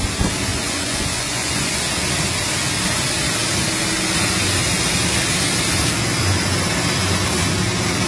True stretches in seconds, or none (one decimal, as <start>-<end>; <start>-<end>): 0.0-0.5; 1.8-8.1